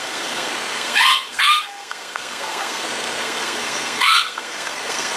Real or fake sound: fake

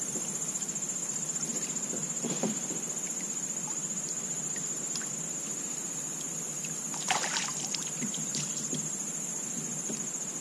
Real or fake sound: real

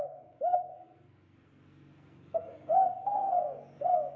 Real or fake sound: fake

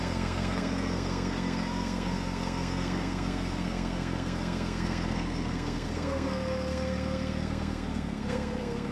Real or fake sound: fake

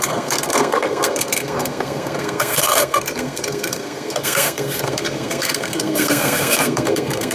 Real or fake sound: fake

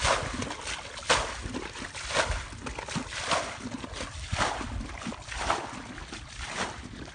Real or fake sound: real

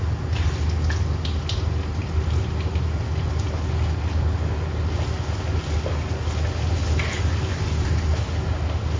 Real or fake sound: real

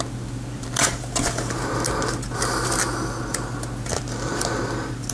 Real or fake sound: real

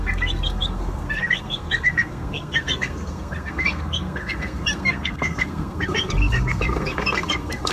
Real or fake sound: fake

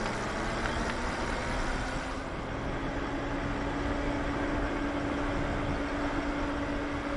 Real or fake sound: real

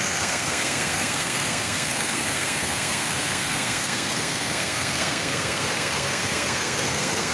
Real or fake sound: fake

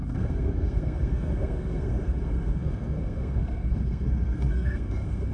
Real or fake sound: fake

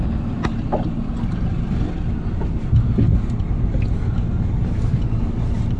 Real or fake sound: real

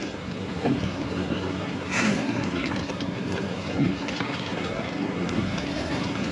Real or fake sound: fake